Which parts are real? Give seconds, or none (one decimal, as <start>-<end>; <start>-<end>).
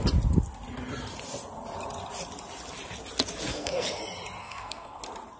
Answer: 0.0-3.5; 4.0-4.4; 5.0-5.4